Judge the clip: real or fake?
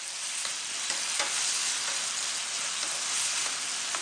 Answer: real